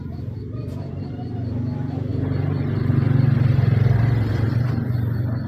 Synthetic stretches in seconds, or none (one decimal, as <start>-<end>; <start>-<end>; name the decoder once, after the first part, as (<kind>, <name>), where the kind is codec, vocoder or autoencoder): 0.0-5.5 (vocoder, BigVGAN v2)